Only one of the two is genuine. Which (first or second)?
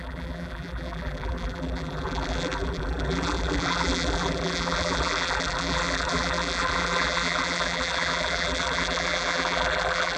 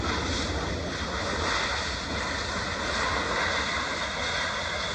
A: second